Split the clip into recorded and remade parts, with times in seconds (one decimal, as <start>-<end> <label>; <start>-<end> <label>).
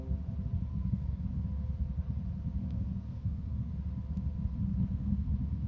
0.0-0.7 recorded; 0.7-1.2 remade; 1.2-2.6 recorded; 2.6-3.7 remade; 3.7-4.7 recorded; 4.7-5.3 remade; 5.3-5.7 recorded